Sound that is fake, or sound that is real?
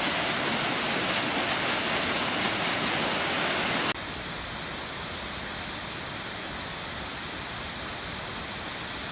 real